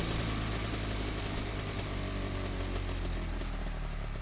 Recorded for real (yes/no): yes